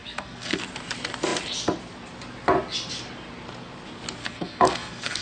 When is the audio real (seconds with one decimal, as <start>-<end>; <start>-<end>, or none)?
0.6-4.2